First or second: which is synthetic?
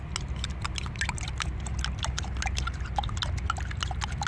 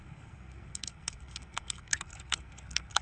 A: second